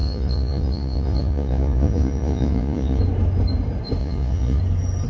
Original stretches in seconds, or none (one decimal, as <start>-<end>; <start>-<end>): 3.0-4.0; 4.6-5.1